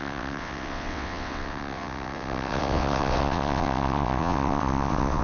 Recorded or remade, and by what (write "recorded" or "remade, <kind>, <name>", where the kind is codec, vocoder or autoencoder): remade, vocoder, WaveNeXt